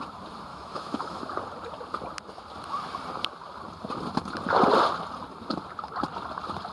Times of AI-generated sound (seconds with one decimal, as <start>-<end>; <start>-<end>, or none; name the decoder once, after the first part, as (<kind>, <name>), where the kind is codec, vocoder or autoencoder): 0.5-1.2 (autoencoder, DAC-VAE)